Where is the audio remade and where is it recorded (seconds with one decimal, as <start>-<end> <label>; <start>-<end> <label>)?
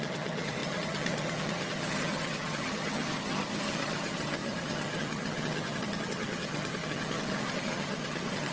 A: 0.0-8.5 remade